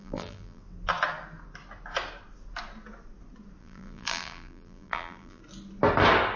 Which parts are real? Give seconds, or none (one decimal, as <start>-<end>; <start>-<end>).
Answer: 0.6-3.6; 5.4-6.4